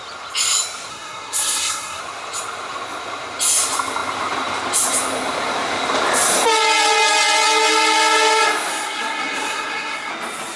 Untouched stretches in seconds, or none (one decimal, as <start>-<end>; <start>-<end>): 0.0-0.9; 2.0-8.7; 10.1-10.6